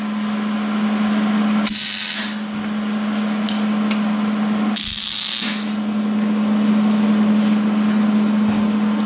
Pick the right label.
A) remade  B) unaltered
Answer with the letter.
B